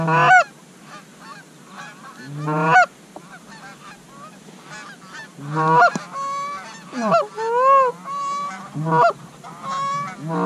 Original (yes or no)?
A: yes